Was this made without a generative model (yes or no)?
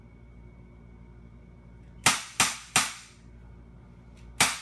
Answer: yes